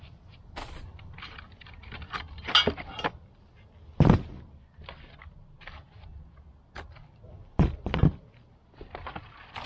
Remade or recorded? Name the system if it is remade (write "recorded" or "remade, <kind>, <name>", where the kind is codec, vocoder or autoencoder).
recorded